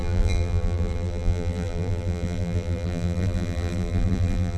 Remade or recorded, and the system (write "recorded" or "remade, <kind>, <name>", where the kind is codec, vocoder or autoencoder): remade, vocoder, BigVGAN v2